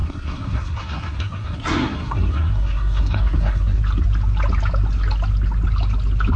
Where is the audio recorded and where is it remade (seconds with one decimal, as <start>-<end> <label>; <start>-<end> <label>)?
0.0-3.8 remade; 3.8-6.4 recorded